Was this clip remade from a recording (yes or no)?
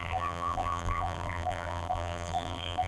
yes